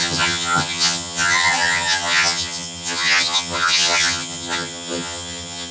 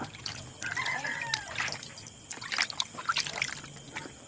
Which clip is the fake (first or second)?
first